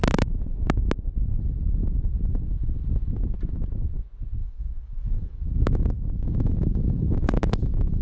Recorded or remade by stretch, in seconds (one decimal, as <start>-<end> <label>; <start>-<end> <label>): 0.0-4.4 recorded; 4.4-8.0 remade